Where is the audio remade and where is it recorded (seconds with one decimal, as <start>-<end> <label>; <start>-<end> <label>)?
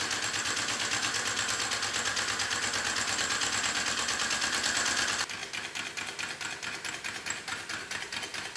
0.0-8.6 recorded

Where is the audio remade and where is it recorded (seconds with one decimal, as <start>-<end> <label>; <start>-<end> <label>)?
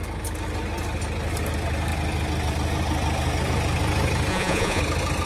0.0-4.3 recorded; 4.3-4.8 remade; 4.8-5.3 recorded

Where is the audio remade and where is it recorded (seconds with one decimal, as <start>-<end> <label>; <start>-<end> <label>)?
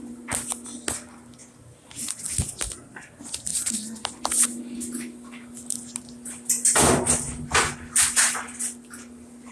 0.0-9.5 recorded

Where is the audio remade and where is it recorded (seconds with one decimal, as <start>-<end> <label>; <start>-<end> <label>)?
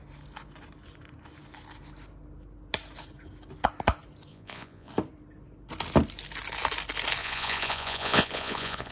0.0-4.3 recorded; 4.3-4.9 remade; 4.9-7.2 recorded; 7.2-8.9 remade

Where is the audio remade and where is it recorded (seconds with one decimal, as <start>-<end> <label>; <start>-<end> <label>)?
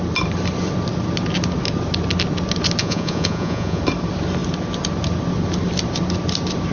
0.0-2.8 recorded; 2.8-3.8 remade; 3.8-6.7 recorded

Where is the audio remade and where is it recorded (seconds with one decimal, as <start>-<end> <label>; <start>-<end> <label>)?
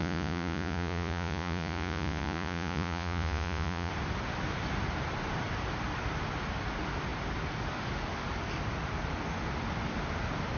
0.0-3.9 remade; 3.9-10.6 recorded